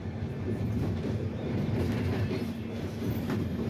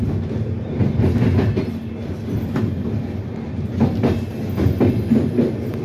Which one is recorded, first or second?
second